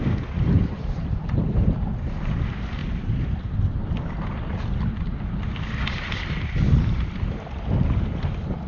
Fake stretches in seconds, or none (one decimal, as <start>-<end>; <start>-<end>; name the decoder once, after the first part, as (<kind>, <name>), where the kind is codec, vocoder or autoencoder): none